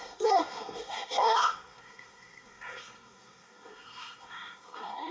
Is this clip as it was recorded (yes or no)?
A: no